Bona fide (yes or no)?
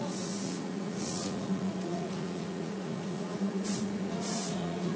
no